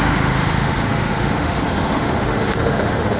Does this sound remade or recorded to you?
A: remade